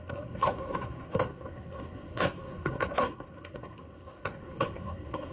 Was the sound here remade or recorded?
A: remade